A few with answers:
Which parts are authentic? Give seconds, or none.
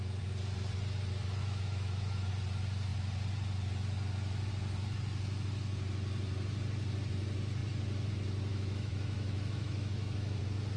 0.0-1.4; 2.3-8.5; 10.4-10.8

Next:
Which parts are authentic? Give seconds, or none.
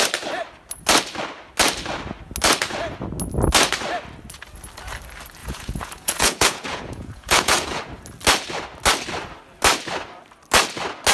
0.0-5.4; 7.8-11.1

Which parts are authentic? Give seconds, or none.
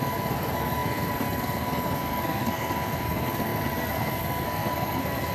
none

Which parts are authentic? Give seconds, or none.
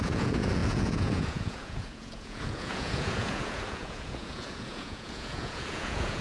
none